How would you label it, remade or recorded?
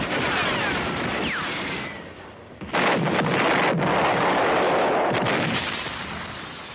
recorded